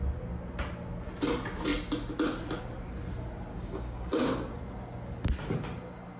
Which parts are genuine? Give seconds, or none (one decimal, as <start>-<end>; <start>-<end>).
0.0-3.5; 4.1-6.2